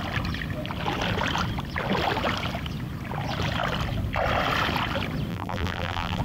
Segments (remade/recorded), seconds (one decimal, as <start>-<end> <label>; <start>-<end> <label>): 0.0-5.3 recorded; 5.3-6.2 remade